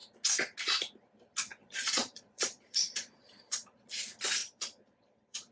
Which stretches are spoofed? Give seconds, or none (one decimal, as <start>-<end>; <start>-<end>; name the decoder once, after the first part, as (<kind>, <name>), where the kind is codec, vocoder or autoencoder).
1.5-3.9 (vocoder, Vocos); 4.4-5.5